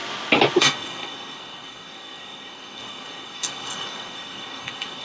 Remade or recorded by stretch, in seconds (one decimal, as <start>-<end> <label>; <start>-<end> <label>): 0.0-0.6 recorded; 0.6-5.0 remade